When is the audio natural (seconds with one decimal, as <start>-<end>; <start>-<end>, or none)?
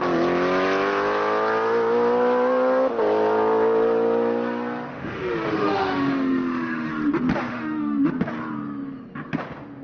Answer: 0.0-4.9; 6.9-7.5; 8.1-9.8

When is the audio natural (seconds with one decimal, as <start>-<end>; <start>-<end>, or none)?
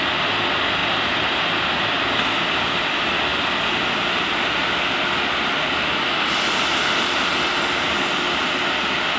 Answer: 0.0-9.2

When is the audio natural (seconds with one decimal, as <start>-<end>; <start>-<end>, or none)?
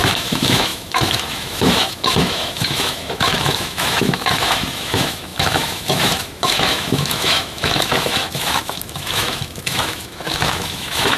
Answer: none